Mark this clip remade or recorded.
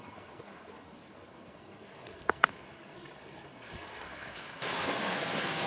remade